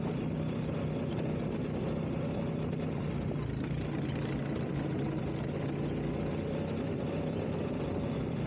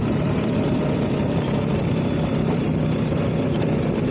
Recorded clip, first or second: first